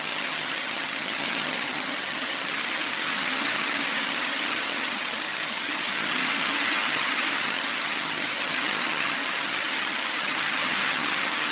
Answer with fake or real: fake